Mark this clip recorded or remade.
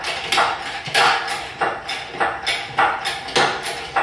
recorded